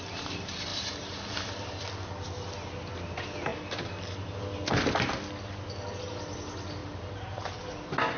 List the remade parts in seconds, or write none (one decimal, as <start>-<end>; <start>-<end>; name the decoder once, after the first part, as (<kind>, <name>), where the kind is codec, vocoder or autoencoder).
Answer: 0.7-1.7 (vocoder, BigVGAN v2); 3.5-4.4; 6.8-7.6